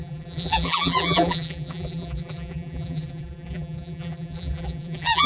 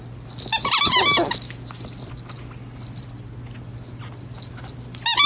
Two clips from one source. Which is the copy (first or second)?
first